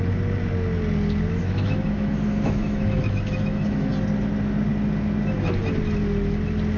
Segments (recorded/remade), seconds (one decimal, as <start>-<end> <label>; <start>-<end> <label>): 0.0-1.4 recorded; 1.4-3.9 remade; 3.9-6.8 recorded